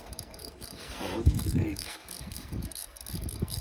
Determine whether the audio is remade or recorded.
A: remade